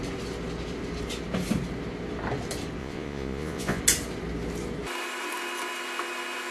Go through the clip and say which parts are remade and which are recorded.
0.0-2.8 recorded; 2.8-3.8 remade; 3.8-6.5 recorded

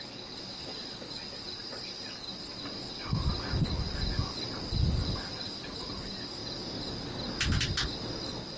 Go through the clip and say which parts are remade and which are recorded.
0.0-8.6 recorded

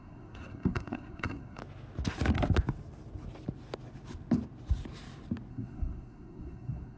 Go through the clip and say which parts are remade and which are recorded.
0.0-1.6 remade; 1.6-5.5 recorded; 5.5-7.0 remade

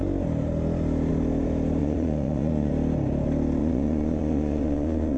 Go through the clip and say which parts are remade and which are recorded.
0.0-1.8 recorded; 1.8-2.7 remade; 2.7-3.6 recorded; 3.6-5.2 remade

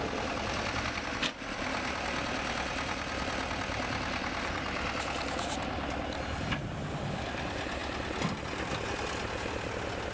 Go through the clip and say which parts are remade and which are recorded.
0.0-10.1 recorded